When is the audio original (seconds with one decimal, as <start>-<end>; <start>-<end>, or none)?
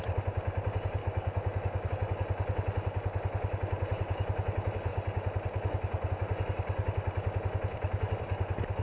0.0-1.0; 1.9-8.8